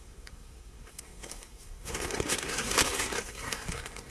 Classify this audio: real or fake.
fake